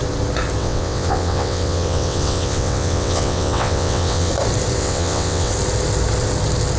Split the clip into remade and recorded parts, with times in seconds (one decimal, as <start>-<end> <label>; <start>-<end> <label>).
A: 0.0-0.6 recorded; 0.6-4.3 remade; 4.3-4.8 recorded; 4.8-5.5 remade; 5.5-6.8 recorded